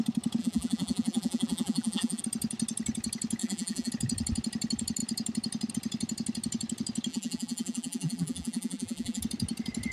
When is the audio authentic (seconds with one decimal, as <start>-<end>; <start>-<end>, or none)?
0.0-0.4; 2.2-3.4; 3.9-7.1; 9.2-9.9